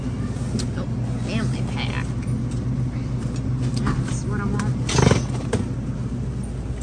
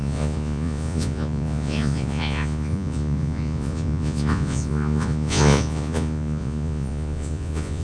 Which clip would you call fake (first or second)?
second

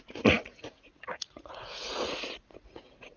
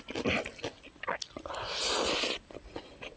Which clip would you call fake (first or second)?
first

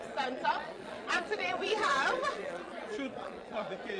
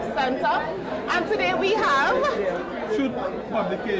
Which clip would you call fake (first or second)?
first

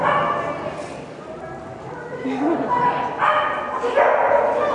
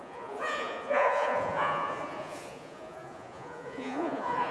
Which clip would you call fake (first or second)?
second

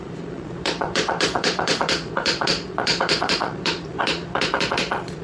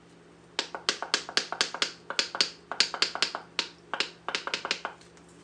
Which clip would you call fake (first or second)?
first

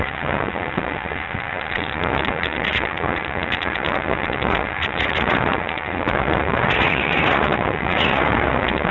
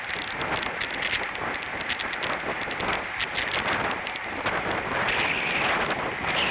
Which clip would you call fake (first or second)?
first